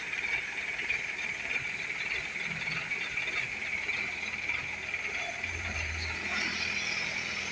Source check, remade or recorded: remade